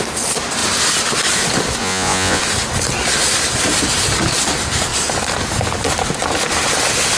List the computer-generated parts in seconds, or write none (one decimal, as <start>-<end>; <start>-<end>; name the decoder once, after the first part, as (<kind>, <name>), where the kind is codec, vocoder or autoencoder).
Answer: 1.8-2.4 (vocoder, Vocos)